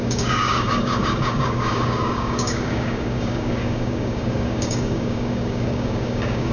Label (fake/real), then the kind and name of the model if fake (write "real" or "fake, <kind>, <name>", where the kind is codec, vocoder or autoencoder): fake, codec, DAC